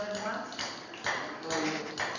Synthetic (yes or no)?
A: no